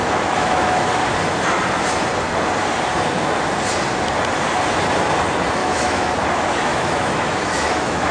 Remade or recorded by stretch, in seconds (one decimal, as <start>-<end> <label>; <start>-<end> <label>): 0.0-0.9 remade; 0.9-5.6 recorded; 5.6-6.1 remade; 6.1-6.7 recorded; 6.7-8.1 remade